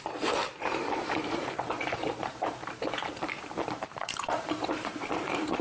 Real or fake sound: fake